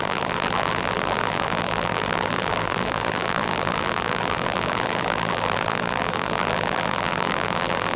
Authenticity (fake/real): fake